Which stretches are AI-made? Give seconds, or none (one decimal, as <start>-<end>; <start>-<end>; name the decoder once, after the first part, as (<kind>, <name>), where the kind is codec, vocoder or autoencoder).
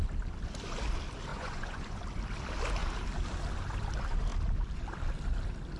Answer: 1.3-2.0 (vocoder, Vocos)